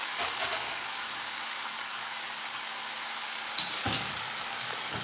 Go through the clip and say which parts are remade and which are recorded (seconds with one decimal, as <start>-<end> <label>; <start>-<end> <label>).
0.0-5.0 remade